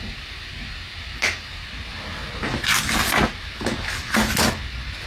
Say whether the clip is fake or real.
real